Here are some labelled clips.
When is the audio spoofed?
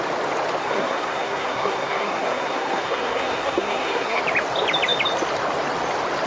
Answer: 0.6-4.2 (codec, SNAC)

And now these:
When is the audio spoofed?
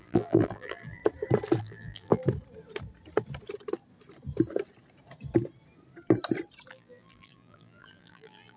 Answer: 0.0-1.0 (vocoder, BigVGAN v2); 1.6-2.2; 6.7-8.6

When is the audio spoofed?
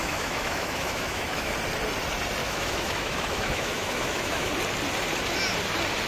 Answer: 0.0-1.5 (autoencoder, DAC-VAE); 2.4-4.5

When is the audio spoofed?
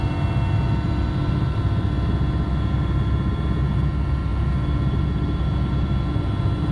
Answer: none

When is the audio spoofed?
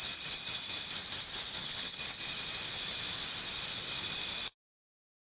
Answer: 1.6-2.2 (codec, HILCodec)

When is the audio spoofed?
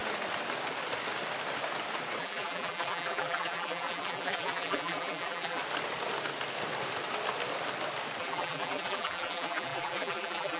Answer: 2.2-5.6 (vocoder, BigVGAN v2); 8.2-10.6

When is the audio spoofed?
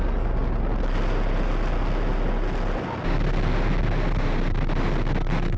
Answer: none